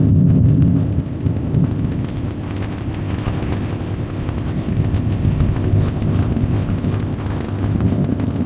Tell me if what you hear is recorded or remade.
remade